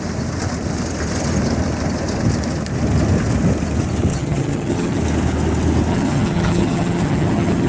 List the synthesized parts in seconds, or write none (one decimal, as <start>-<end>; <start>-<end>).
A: 4.1-5.0; 5.9-7.7